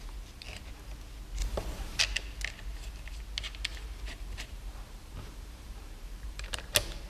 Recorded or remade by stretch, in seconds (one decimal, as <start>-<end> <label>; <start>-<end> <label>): 0.0-1.4 recorded; 1.4-2.0 remade; 2.0-2.7 recorded; 2.7-3.2 remade; 3.2-3.7 recorded; 3.7-6.5 remade; 6.5-7.1 recorded

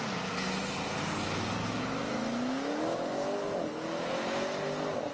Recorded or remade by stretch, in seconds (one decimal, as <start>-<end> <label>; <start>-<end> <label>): 0.0-1.6 recorded; 1.6-4.1 remade; 4.1-5.1 recorded

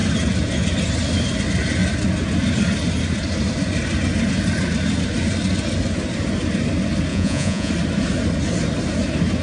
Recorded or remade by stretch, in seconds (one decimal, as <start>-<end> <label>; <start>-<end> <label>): 0.0-7.1 recorded; 7.1-7.7 remade; 7.7-9.4 recorded